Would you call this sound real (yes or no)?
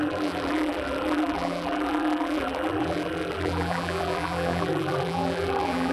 no